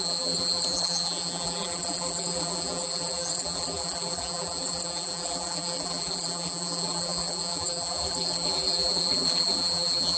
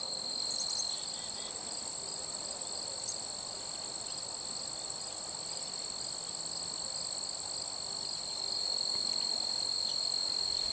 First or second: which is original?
second